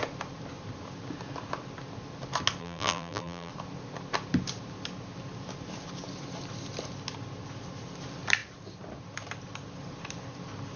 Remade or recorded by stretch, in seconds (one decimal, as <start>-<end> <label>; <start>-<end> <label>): 0.0-2.6 recorded; 2.6-3.5 remade; 3.5-10.8 recorded